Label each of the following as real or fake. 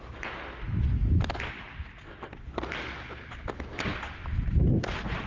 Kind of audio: real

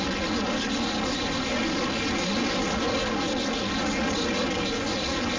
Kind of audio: real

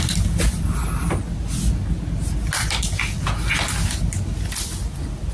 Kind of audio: real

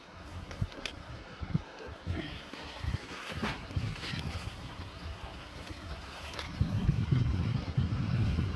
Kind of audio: fake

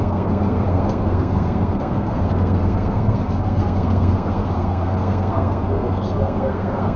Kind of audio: fake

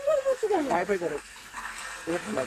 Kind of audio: fake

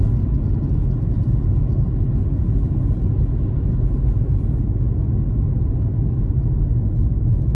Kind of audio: real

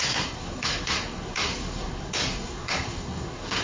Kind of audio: fake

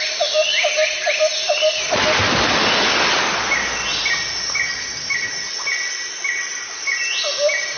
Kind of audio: real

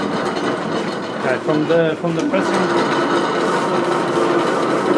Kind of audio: real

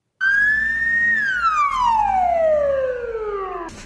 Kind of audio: real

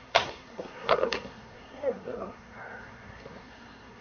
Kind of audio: fake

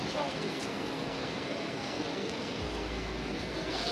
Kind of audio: fake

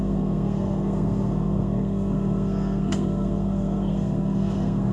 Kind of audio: fake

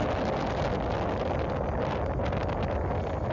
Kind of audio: real